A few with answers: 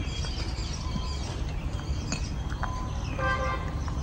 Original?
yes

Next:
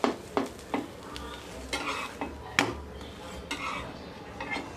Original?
yes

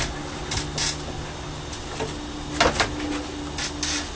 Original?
yes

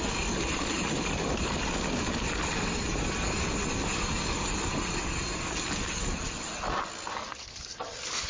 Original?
yes